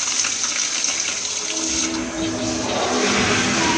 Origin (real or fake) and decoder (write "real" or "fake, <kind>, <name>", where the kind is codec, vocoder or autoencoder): real